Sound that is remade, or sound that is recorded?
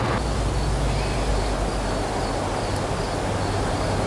recorded